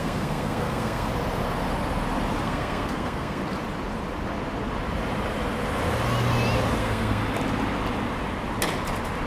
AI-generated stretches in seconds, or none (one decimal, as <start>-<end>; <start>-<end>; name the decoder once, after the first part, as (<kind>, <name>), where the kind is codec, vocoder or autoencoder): 0.0-1.1 (codec, SNAC); 2.4-3.4; 6.8-7.2